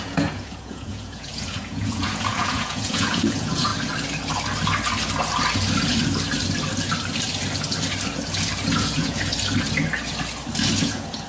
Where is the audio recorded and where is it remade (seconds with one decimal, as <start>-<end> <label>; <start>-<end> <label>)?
0.0-3.7 remade; 3.7-8.7 recorded; 8.7-9.3 remade; 9.3-10.8 recorded; 10.8-11.3 remade